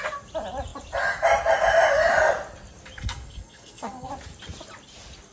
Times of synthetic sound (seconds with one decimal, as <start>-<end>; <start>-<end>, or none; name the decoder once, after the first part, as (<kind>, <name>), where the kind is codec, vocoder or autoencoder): 3.0-4.1 (codec, SNAC)